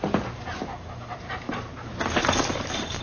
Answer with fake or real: real